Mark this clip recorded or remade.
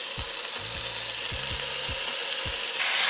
recorded